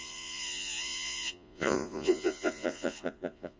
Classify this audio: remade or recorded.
remade